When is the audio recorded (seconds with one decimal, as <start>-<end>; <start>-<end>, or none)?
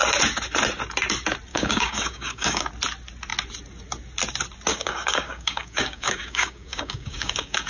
0.0-1.5; 2.7-4.7